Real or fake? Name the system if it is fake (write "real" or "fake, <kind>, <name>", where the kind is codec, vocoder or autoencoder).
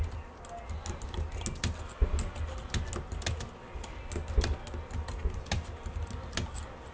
real